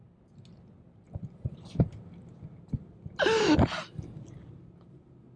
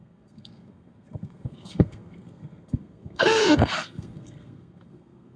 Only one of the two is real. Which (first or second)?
first